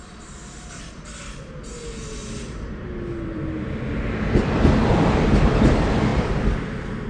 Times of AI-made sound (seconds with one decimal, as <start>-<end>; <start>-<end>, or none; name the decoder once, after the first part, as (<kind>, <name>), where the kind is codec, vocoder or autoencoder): 2.2-4.4 (vocoder, BigVGAN v2); 6.1-7.1